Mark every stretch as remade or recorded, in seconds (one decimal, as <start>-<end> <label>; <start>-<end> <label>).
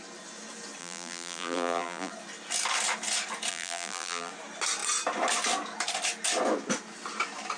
0.0-0.8 recorded; 0.8-2.1 remade; 2.1-3.5 recorded; 3.5-4.3 remade; 4.3-7.6 recorded